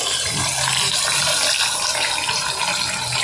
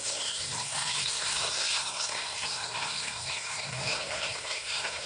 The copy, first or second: second